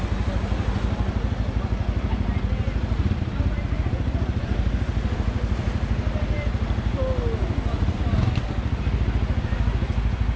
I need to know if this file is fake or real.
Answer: real